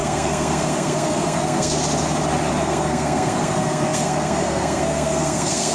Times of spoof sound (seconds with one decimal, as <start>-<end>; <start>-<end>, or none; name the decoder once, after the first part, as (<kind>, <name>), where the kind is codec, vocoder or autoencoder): 0.0-1.8 (codec, SNAC); 2.6-5.7